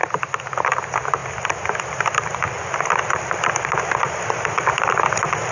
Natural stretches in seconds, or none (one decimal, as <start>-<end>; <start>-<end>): 1.2-4.5